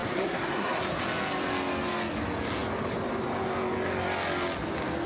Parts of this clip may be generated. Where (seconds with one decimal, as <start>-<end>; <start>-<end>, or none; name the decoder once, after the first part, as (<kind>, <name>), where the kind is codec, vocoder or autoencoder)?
0.0-0.8 (codec, SNAC)